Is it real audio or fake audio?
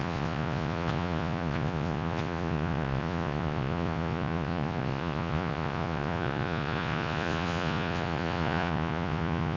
fake